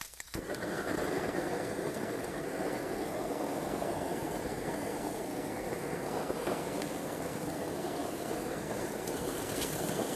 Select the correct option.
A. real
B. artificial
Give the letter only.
B